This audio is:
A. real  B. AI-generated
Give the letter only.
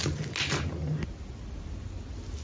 A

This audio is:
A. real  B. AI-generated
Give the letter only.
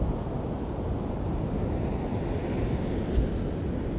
A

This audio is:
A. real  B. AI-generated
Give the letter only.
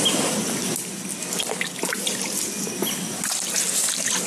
A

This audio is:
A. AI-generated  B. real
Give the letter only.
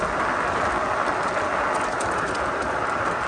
B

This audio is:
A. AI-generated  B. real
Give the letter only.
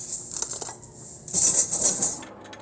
B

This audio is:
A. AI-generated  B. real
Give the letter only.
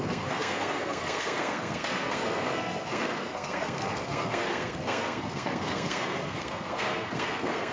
A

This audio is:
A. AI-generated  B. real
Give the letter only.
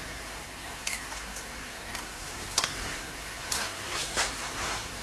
A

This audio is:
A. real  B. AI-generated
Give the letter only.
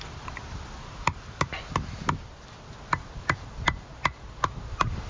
A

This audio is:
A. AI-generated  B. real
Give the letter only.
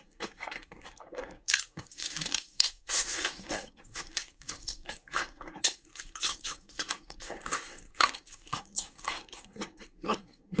A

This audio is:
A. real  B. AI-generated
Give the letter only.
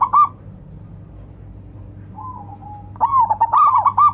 A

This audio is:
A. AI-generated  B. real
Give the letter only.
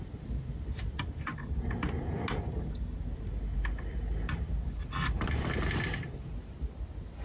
B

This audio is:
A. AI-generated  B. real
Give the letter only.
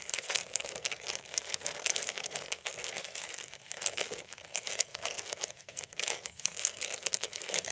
A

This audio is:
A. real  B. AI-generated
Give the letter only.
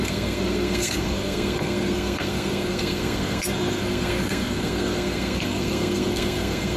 B